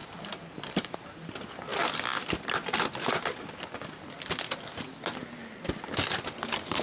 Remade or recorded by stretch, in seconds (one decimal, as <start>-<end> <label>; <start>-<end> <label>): 0.0-6.8 recorded